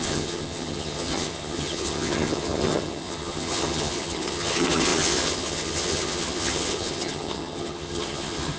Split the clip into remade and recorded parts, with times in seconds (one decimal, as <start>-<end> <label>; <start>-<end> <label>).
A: 0.0-8.6 remade